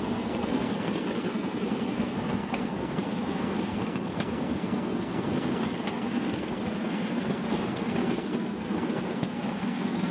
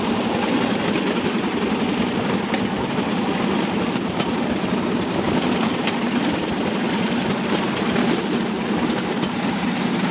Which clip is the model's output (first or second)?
first